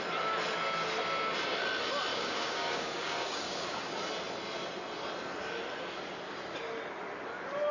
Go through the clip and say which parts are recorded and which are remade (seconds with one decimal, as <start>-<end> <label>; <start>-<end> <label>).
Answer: 0.0-2.1 recorded; 2.1-3.9 remade; 3.9-7.7 recorded